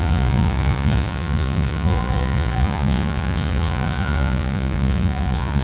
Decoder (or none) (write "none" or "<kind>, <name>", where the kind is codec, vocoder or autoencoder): vocoder, Vocos